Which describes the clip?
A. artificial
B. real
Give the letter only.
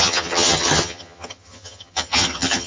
A